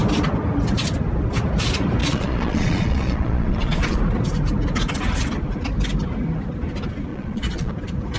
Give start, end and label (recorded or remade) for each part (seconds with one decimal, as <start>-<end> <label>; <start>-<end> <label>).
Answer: 0.0-2.0 recorded; 2.0-4.0 remade; 4.0-7.1 recorded; 7.1-7.7 remade; 7.7-8.2 recorded

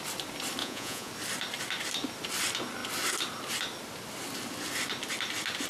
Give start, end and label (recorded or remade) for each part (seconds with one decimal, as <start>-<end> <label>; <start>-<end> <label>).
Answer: 0.0-0.6 recorded; 0.6-1.1 remade; 1.1-5.7 recorded